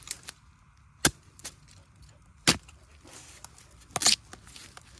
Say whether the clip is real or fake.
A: real